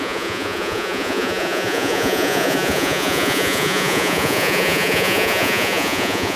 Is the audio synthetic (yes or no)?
yes